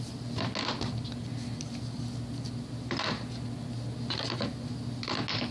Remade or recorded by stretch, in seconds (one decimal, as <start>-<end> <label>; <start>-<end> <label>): 0.0-5.5 recorded